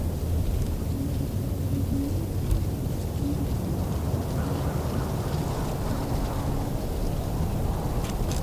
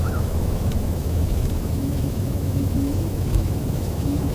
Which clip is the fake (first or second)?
second